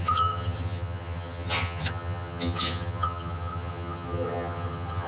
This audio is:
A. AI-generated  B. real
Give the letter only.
A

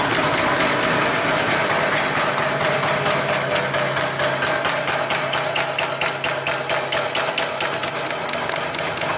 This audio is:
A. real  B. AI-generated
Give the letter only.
A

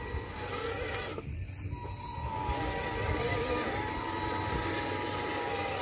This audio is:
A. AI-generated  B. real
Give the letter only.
B